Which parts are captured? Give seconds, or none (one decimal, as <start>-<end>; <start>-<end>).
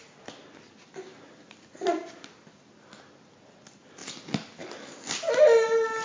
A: 0.0-6.0